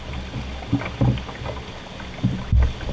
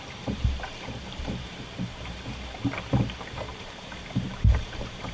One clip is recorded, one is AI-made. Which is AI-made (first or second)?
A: second